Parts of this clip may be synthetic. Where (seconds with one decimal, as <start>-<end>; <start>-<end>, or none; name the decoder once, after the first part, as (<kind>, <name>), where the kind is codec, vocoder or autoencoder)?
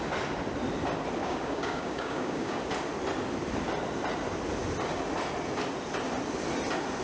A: 1.2-2.6 (codec, DAC)